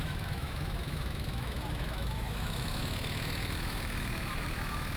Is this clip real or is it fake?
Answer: fake